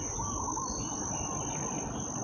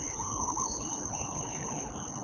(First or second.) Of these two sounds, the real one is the first